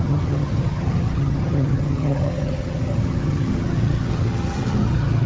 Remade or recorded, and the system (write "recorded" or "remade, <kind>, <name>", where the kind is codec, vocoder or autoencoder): remade, vocoder, HiFi-GAN